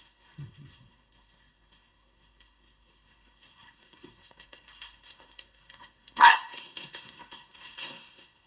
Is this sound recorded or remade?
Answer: remade